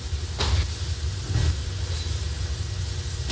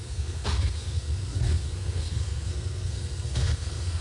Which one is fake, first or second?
second